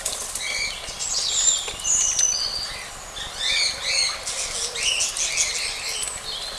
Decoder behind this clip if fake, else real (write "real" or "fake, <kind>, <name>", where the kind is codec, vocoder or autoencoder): real